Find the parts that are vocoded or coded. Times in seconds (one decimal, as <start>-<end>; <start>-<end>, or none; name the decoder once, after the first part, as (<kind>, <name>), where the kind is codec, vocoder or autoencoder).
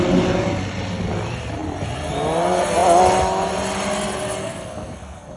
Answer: 4.4-5.4 (codec, SNAC)